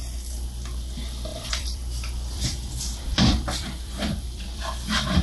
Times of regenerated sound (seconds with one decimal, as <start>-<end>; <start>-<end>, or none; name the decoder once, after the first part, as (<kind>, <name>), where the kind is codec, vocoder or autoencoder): 1.3-2.7 (vocoder, BigVGAN v2); 3.1-4.6